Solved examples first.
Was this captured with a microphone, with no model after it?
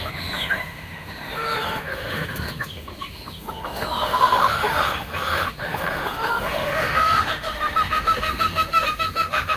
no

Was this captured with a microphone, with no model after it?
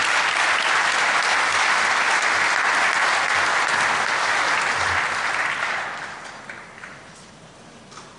yes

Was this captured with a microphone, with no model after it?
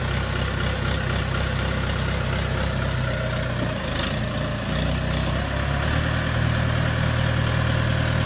yes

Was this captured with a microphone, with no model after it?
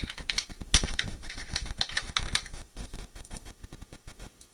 no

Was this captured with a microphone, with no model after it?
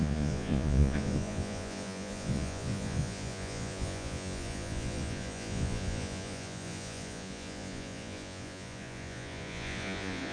no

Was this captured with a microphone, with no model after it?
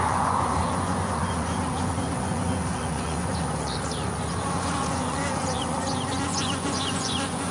no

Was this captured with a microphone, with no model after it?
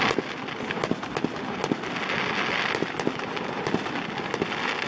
yes